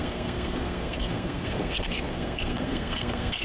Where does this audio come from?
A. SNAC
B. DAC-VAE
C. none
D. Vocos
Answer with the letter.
A